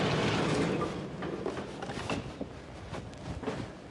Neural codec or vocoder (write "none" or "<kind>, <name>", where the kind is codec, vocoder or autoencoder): none